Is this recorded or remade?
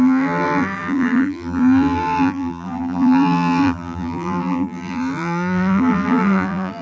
remade